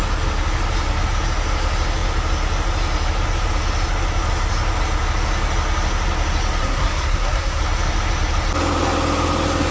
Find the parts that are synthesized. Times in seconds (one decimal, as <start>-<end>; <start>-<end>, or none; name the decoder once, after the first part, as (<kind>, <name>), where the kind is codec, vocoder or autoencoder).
6.6-7.6 (codec, SNAC)